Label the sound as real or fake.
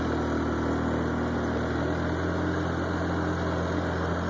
real